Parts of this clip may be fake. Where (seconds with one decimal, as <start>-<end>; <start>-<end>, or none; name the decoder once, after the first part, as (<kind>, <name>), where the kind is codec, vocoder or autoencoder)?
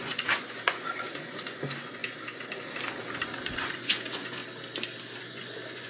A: 0.0-2.0 (vocoder, Vocos); 3.1-4.4; 5.2-5.9